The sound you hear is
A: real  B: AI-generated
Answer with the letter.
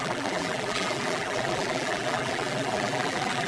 B